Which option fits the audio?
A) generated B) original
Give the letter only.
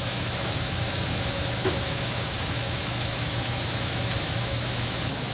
A